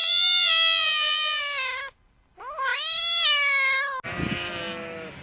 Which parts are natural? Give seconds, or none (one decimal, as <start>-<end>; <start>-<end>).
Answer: 1.4-5.2